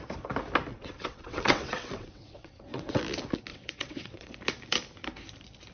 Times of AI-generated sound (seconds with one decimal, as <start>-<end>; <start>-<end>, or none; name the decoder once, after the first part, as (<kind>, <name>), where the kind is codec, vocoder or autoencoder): 0.7-3.0 (vocoder, WaveNeXt); 3.5-4.3